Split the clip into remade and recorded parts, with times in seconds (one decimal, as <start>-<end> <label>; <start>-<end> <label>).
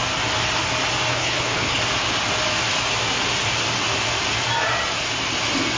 0.0-1.1 recorded; 1.1-1.8 remade; 1.8-5.8 recorded